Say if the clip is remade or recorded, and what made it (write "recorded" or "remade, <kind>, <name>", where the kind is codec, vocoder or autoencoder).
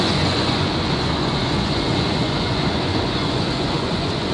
remade, vocoder, Vocos